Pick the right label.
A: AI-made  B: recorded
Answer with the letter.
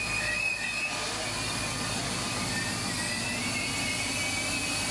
B